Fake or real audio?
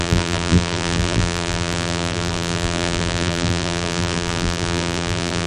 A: fake